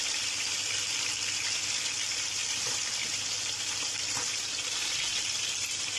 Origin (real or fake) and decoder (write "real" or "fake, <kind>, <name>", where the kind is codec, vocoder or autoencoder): fake, vocoder, BigVGAN v2